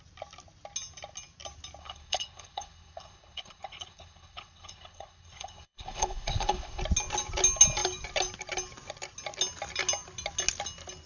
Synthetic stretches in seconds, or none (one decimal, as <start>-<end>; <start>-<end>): 1.8-6.8